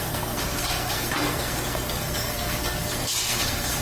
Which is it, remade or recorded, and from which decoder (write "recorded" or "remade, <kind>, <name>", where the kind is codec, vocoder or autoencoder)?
remade, codec, SNAC